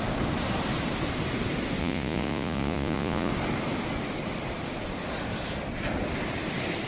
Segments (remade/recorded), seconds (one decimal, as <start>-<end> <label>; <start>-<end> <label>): 0.0-1.8 recorded; 1.8-3.3 remade; 3.3-6.9 recorded